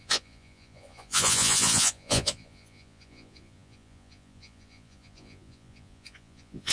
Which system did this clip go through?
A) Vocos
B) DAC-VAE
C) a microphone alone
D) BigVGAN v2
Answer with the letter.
A